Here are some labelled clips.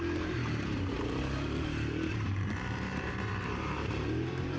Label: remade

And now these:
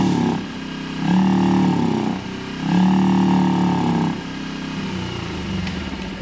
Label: recorded